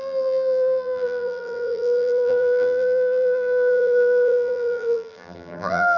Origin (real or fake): fake